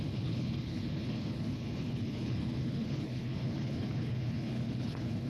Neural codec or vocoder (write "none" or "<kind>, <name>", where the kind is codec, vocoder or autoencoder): codec, HILCodec